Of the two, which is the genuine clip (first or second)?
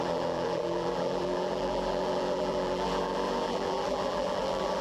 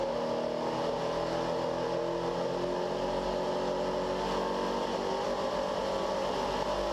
second